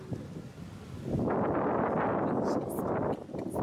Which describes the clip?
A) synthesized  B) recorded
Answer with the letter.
B